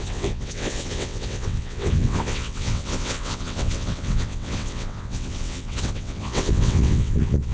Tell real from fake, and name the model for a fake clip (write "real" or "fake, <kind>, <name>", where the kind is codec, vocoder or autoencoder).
fake, vocoder, WaveNeXt